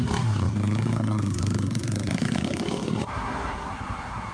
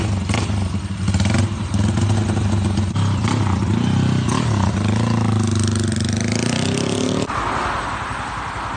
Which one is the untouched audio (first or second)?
second